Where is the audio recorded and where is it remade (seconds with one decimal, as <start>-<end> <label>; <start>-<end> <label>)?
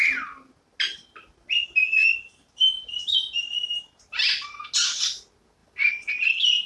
0.0-6.7 recorded